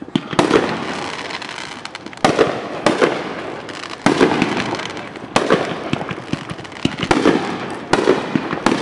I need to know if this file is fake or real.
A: real